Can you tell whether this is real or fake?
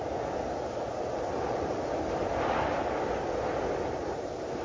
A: real